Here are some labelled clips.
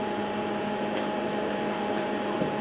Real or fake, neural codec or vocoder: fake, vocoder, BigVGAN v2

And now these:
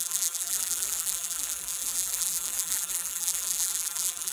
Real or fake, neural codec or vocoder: fake, vocoder, BigVGAN v2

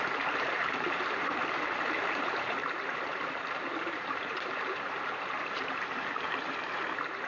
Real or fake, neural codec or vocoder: fake, vocoder, BigVGAN v2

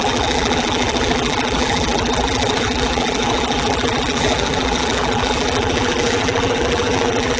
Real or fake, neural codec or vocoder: fake, vocoder, BigVGAN v2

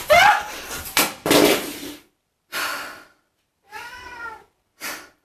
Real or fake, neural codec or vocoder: fake, vocoder, BigVGAN v2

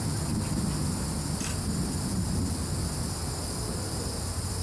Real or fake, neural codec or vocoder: real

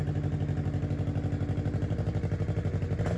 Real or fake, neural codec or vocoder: real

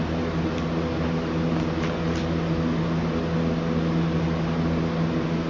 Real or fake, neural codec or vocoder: real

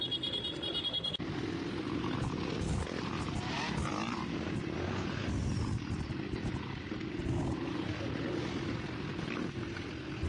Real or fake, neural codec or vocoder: real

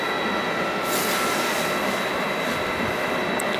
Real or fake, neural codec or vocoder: real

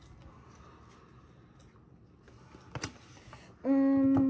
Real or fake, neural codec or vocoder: real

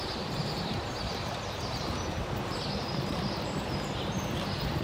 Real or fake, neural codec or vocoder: fake, vocoder, BigVGAN v2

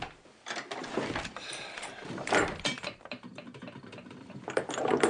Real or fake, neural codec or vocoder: fake, vocoder, BigVGAN v2